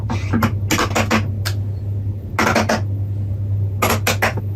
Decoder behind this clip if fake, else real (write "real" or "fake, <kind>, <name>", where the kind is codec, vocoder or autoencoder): real